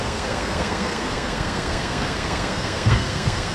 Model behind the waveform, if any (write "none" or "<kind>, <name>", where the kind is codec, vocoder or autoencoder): codec, SNAC